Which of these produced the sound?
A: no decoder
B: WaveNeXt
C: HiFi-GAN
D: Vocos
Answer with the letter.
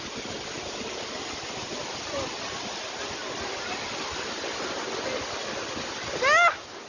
A